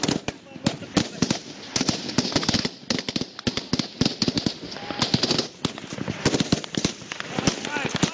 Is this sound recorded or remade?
recorded